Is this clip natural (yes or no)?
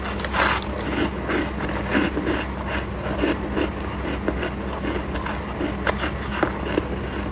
yes